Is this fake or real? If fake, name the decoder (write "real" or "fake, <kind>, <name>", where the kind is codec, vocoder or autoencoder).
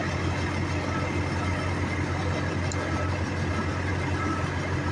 real